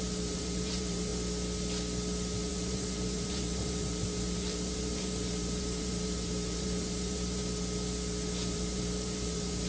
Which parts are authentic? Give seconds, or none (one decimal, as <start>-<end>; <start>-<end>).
1.1-2.5; 7.4-8.5